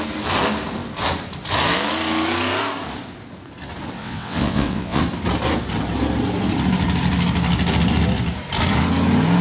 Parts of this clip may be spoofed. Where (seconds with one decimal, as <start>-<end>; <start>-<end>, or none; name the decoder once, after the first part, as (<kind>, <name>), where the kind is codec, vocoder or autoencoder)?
4.0-5.0 (vocoder, WaveNeXt)